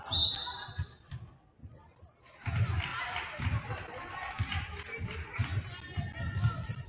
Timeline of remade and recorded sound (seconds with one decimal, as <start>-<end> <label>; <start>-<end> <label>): 0.0-6.9 recorded